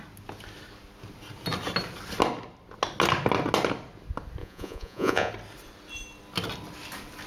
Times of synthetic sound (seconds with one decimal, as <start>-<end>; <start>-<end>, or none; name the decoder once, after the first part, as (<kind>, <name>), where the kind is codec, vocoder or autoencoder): 4.4-5.3 (vocoder, Vocos)